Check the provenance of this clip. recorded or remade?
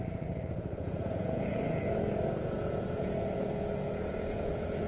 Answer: remade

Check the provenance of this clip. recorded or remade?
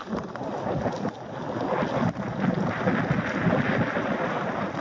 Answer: recorded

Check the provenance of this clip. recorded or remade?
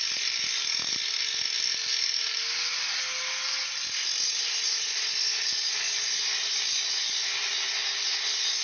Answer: recorded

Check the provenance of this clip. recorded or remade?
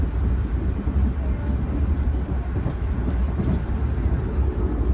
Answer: recorded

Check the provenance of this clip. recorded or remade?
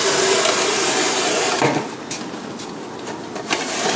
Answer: recorded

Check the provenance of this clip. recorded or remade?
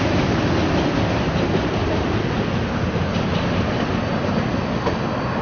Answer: recorded